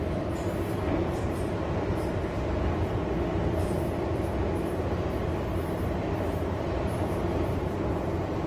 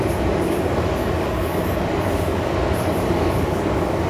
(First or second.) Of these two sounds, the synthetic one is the second